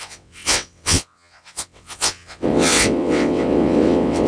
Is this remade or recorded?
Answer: remade